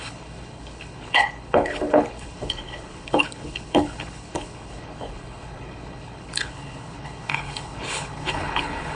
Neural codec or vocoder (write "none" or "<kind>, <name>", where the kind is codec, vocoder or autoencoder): codec, HILCodec